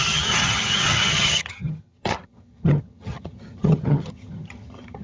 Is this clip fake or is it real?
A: fake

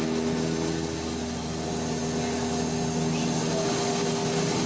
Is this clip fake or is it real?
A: real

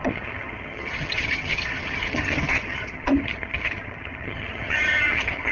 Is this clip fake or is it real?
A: fake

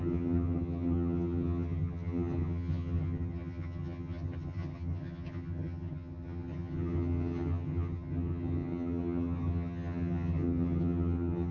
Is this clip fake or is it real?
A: fake